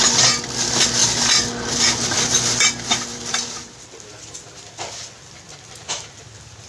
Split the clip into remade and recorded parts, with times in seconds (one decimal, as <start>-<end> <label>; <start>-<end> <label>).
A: 0.0-6.7 recorded